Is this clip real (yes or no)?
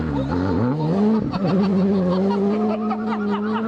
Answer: yes